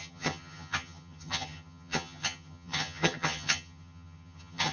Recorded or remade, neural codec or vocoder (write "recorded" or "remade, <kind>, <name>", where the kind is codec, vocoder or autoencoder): remade, vocoder, HiFi-GAN